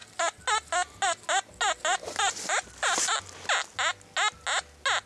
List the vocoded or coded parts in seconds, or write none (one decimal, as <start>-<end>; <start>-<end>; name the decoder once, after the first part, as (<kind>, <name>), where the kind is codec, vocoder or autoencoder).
none